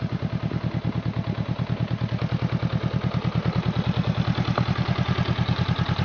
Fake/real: real